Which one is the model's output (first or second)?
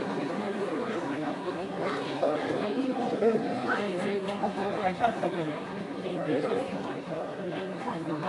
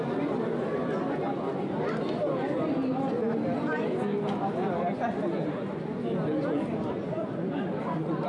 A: first